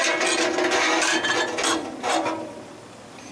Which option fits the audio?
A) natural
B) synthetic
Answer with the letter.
A